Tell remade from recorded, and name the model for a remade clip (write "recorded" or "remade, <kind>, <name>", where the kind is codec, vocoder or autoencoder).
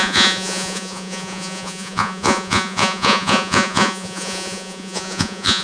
remade, vocoder, Vocos